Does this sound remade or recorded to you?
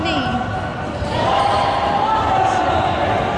recorded